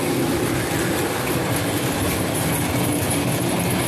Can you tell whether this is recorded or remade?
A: recorded